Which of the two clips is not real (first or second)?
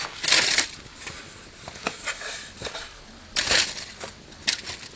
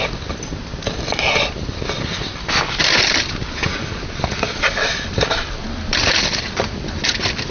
second